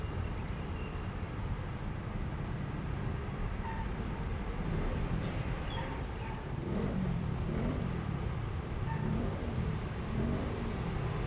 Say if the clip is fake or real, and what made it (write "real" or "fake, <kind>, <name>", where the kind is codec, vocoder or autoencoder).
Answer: fake, vocoder, BigVGAN v2